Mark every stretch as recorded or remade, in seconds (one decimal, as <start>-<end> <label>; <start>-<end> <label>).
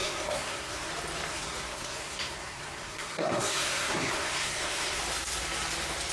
0.0-0.9 remade; 0.9-1.3 recorded; 1.3-5.0 remade; 5.0-6.1 recorded